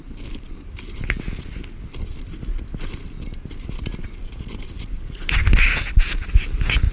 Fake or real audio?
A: real